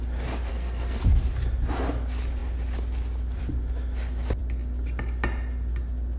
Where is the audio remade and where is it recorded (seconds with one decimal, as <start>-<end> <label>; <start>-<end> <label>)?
0.0-0.5 recorded; 0.5-1.0 remade; 1.0-6.2 recorded